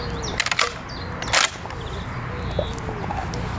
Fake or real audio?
real